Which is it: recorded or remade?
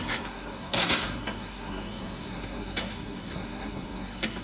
remade